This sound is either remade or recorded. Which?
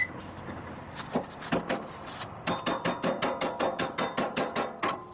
recorded